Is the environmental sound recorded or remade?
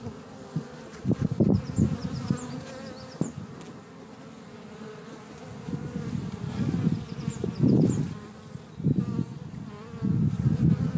recorded